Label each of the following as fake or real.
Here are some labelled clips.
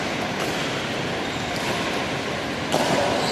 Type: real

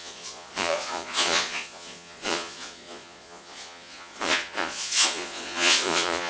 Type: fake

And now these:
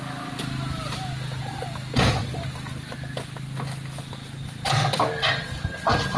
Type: real